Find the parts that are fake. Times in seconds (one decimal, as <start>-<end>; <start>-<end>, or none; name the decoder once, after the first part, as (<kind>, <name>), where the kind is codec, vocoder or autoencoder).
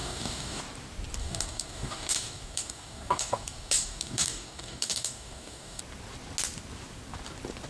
0.0-0.6 (codec, DAC); 1.2-5.8